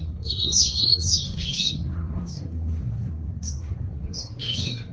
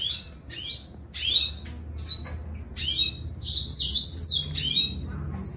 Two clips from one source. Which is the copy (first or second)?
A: first